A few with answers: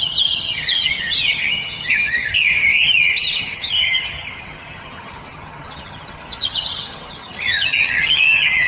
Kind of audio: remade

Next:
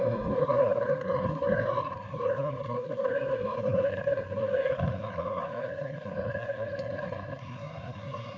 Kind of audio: remade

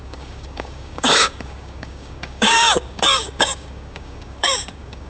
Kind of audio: remade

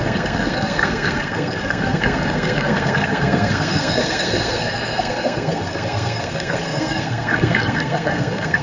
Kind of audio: remade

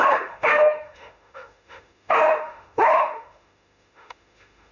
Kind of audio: remade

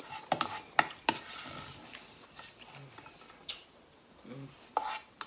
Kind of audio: recorded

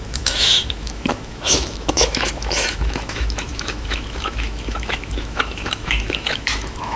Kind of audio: remade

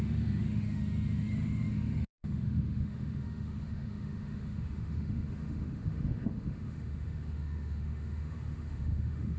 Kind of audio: remade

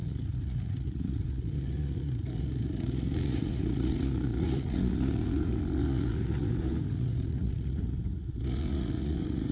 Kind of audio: remade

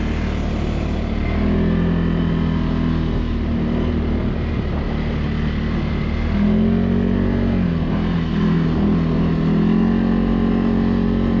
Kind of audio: recorded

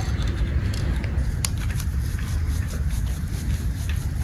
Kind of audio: remade